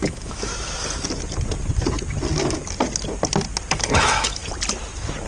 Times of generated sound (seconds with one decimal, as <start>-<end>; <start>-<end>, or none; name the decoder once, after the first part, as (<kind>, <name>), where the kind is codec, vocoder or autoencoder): 0.0-0.5 (autoencoder, DAC-VAE); 3.7-4.4